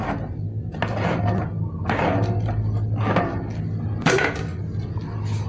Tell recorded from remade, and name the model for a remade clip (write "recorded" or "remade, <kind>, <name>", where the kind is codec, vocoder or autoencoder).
recorded